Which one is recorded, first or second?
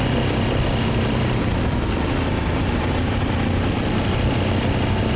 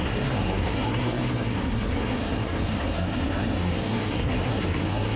first